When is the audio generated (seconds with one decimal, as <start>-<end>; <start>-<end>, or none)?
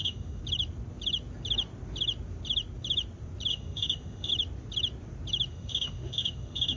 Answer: 0.0-0.4; 3.5-4.3; 5.5-6.8